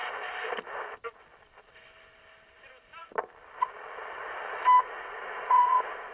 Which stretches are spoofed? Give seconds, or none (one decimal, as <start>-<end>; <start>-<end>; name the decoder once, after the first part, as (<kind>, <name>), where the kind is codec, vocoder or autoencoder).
4.8-6.1 (vocoder, Vocos)